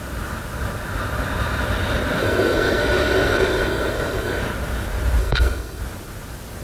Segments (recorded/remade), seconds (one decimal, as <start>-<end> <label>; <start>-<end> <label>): 0.0-2.2 recorded; 2.2-4.4 remade; 4.4-5.2 recorded; 5.2-5.8 remade; 5.8-6.6 recorded